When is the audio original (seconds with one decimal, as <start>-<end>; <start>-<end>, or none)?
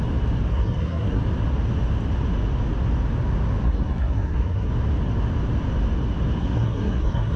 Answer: 0.0-0.5; 1.2-3.6; 4.7-6.4